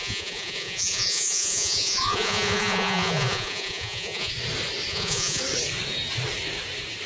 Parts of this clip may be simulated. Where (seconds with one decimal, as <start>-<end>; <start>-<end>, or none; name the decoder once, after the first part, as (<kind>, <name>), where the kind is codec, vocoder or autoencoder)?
0.0-4.3 (vocoder, Vocos); 4.9-5.4